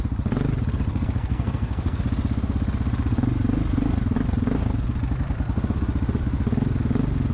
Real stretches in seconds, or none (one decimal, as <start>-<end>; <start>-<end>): 0.0-0.9; 2.0-7.3

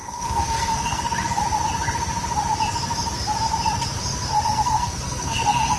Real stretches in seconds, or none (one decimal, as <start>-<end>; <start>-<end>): 1.4-4.3

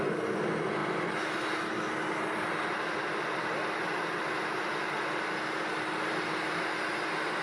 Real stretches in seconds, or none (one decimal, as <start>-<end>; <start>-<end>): 0.0-7.4